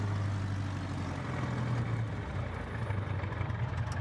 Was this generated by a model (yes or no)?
no